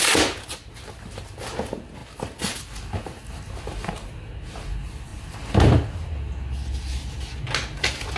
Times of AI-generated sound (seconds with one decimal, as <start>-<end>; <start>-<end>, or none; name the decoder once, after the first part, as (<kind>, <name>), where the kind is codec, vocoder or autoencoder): none

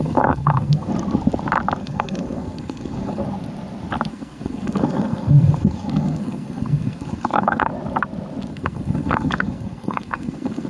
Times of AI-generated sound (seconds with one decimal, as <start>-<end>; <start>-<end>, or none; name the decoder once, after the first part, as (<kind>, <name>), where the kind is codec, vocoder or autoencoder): 0.0-0.9 (codec, SNAC); 1.8-3.2; 4.1-7.7; 8.5-10.7

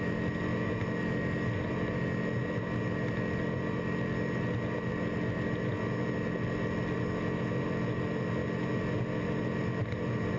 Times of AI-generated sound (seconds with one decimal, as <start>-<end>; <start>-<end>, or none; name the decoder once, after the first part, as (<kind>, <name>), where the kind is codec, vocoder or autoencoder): none

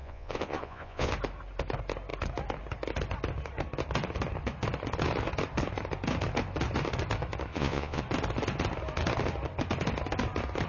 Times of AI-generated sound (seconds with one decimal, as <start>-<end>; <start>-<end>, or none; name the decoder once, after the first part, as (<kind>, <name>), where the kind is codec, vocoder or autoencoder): 0.0-1.1 (vocoder, Vocos); 7.5-8.0